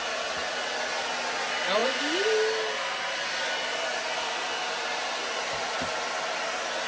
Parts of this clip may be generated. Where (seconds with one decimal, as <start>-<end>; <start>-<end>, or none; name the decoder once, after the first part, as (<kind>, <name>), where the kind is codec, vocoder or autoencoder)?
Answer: none